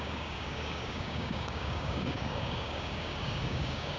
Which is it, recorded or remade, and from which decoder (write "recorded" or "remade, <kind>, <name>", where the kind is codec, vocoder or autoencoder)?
remade, codec, DAC